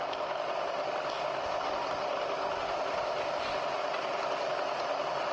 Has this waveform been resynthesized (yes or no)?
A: no